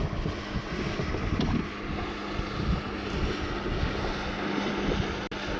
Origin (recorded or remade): recorded